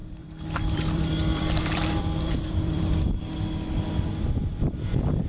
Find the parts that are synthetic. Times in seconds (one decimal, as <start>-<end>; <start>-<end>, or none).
0.0-5.3